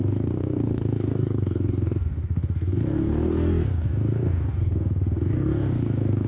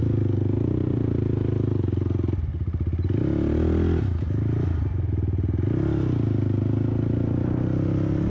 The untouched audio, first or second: second